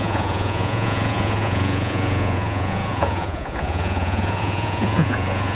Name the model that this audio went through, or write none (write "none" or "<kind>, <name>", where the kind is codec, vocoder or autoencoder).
vocoder, Vocos